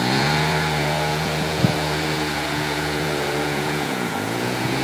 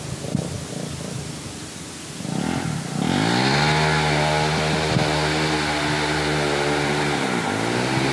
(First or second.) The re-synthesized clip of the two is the first